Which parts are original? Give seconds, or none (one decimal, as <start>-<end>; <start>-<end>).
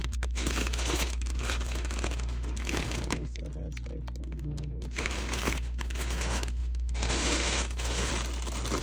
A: 3.4-4.2; 8.1-8.8